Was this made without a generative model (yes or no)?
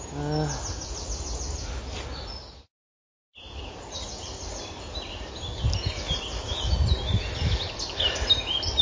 yes